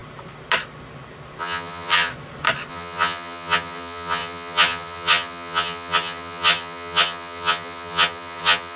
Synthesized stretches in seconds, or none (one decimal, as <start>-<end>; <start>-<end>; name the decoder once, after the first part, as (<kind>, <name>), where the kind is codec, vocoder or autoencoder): 1.4-2.1 (vocoder, HiFi-GAN); 2.7-8.8